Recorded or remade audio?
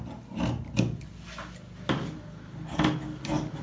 recorded